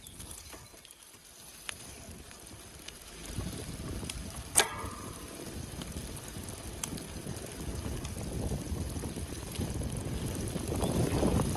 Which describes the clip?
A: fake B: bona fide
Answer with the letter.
B